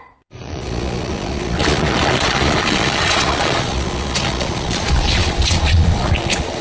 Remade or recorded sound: remade